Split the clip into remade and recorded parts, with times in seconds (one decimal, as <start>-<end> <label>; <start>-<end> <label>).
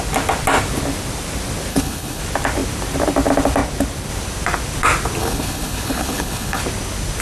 0.0-1.7 recorded; 1.7-2.2 remade; 2.2-5.2 recorded; 5.2-6.6 remade; 6.6-7.2 recorded